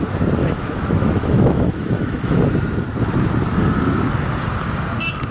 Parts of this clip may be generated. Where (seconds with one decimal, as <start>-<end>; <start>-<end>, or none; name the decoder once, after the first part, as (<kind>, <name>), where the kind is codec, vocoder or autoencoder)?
0.4-2.4 (autoencoder, DAC-VAE)